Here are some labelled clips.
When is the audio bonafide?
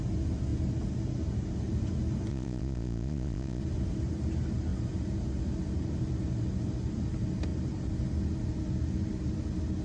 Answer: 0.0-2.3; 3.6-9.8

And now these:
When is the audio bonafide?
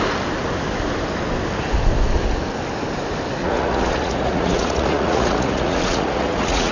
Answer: 0.0-3.4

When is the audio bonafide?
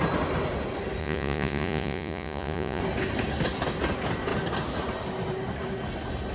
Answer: 0.0-1.0; 2.8-6.3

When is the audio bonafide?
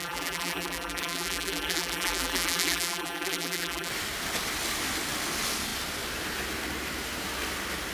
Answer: 3.9-7.9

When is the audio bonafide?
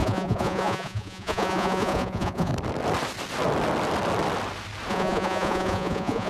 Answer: 2.5-4.9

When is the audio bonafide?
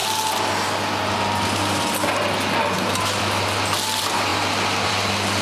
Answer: 0.0-5.4